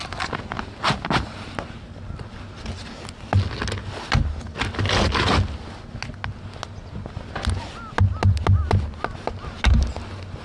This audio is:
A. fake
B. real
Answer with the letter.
B